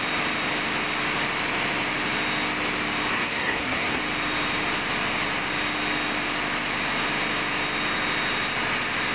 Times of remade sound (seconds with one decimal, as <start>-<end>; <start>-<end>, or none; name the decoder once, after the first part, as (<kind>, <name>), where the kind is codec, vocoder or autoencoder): 3.1-4.0 (codec, SNAC)